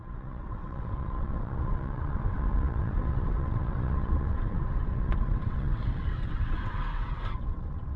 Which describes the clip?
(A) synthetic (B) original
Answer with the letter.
A